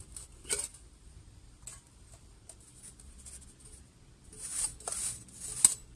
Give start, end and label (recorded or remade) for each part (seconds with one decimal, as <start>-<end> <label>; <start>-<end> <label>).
0.0-6.0 recorded